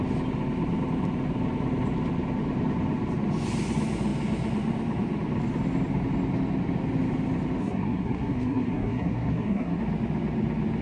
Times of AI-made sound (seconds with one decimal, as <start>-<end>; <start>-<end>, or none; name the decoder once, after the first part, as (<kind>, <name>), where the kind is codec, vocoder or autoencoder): 7.6-9.8 (codec, SNAC)